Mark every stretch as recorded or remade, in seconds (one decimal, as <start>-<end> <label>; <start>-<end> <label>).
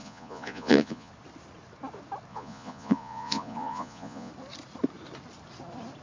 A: 0.0-1.1 remade; 1.1-2.3 recorded; 2.3-4.3 remade; 4.3-6.0 recorded